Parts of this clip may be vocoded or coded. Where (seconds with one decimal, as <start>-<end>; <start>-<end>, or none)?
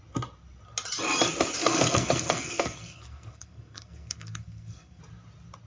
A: 1.6-5.0